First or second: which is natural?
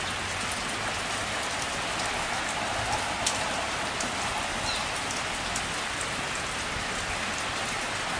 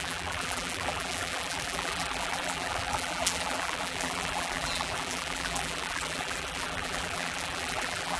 first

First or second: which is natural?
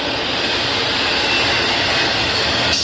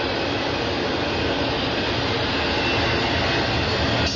second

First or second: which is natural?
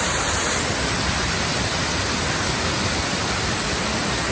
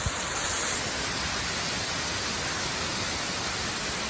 second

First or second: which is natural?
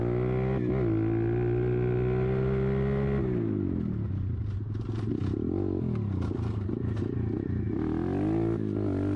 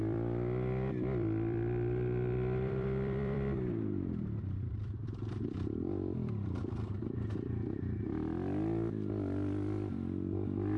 first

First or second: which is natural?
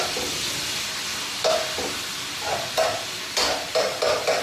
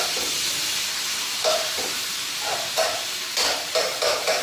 first